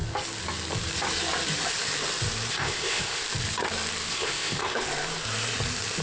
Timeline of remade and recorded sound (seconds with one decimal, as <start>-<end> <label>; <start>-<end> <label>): 0.0-2.5 recorded; 2.5-3.2 remade; 3.2-4.1 recorded; 4.1-4.8 remade; 4.8-6.0 recorded